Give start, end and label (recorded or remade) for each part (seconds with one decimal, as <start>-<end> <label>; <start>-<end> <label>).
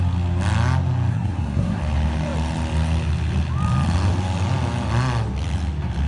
0.0-1.1 recorded; 1.1-1.8 remade; 1.8-6.1 recorded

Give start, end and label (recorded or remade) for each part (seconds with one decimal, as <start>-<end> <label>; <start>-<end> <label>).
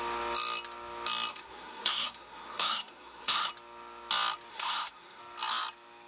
0.0-1.3 recorded; 1.3-3.5 remade; 3.5-4.5 recorded; 4.5-5.2 remade; 5.2-6.1 recorded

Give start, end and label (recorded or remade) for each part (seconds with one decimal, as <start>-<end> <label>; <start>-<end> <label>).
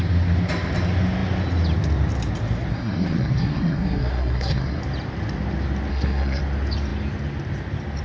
0.0-2.7 recorded; 2.7-4.8 remade; 4.8-5.9 recorded; 5.9-6.4 remade; 6.4-8.0 recorded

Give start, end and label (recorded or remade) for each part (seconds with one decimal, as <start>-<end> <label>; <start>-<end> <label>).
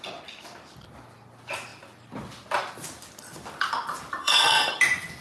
0.0-4.2 recorded; 4.2-4.7 remade; 4.7-5.2 recorded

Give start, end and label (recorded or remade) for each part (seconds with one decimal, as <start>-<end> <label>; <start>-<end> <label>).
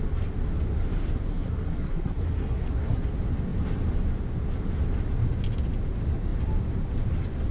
0.0-1.3 recorded; 1.3-3.0 remade; 3.0-7.5 recorded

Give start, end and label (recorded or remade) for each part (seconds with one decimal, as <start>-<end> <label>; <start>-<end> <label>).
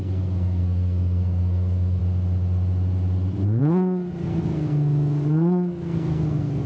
0.0-2.0 remade; 2.0-3.6 recorded; 3.6-6.7 remade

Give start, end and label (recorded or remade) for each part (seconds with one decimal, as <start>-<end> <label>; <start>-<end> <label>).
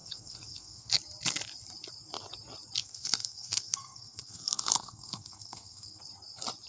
0.0-0.9 remade; 0.9-2.8 recorded; 2.8-6.0 remade; 6.0-6.7 recorded